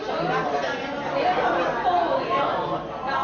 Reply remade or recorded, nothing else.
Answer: recorded